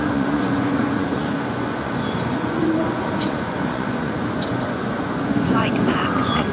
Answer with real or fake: fake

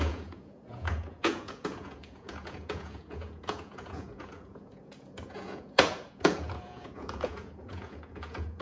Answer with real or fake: fake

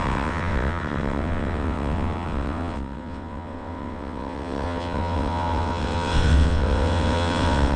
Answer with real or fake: fake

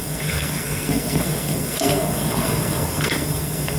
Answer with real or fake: fake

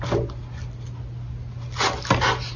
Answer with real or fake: real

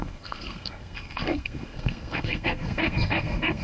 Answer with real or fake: fake